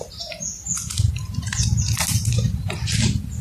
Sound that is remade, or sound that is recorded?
remade